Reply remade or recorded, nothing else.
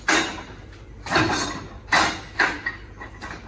recorded